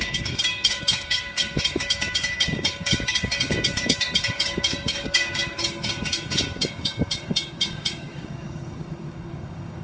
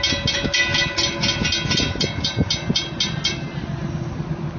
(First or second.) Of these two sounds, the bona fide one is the second